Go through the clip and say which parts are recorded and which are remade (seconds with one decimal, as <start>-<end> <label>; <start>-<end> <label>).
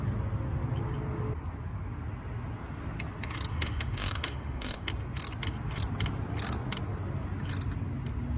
0.0-3.5 recorded; 3.5-4.9 remade; 4.9-8.4 recorded